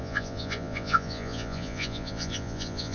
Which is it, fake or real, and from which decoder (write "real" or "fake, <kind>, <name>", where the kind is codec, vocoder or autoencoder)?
fake, vocoder, Vocos